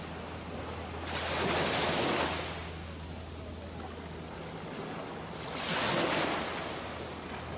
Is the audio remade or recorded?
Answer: recorded